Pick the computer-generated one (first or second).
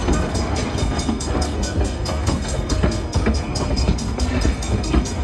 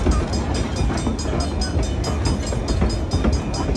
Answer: first